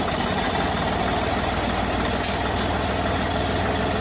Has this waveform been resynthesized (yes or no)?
no